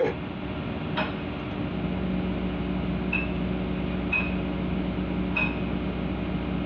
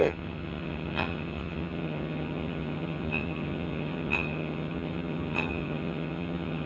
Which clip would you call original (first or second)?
first